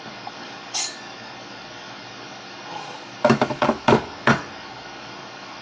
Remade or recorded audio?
remade